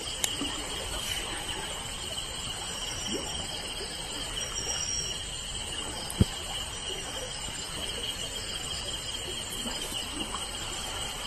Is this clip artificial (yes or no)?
no